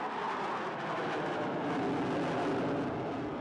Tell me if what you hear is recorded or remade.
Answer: recorded